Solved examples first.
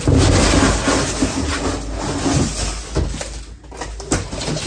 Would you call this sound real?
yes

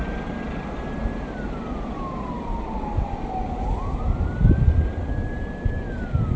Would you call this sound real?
yes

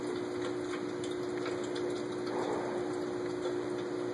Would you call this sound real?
yes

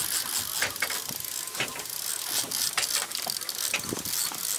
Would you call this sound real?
yes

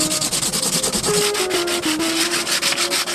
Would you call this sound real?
yes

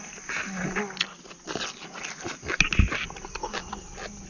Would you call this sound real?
yes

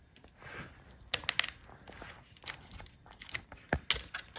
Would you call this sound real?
yes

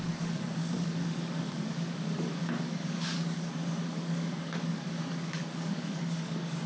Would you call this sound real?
no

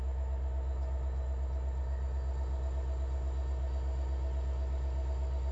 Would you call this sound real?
yes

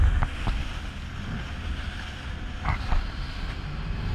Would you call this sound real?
yes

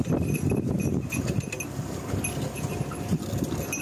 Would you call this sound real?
yes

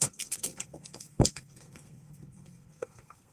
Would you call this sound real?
no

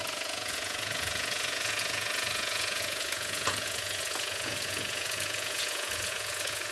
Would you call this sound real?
no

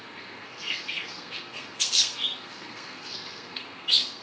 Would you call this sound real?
no